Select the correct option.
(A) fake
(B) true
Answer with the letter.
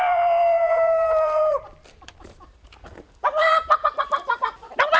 A